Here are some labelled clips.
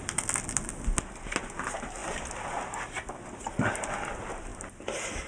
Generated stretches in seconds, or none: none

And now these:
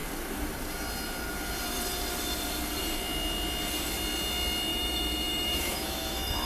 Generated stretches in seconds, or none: 4.7-6.5